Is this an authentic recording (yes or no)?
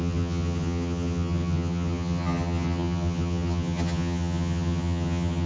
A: no